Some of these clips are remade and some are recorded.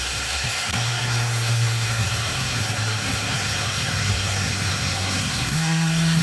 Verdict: remade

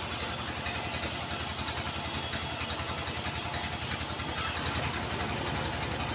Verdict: recorded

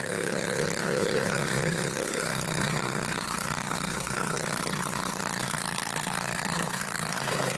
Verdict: remade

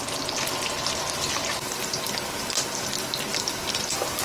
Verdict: recorded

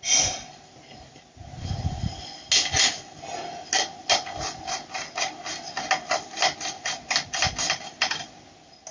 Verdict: recorded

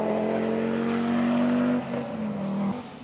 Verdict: recorded